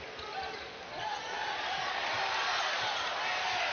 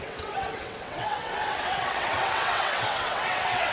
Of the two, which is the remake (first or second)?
second